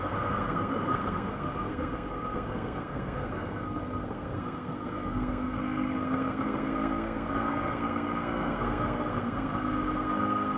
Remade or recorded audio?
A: remade